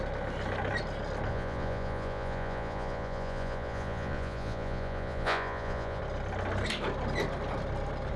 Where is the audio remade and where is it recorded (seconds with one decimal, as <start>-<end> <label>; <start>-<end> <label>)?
0.0-1.3 recorded; 1.3-6.0 remade; 6.0-8.2 recorded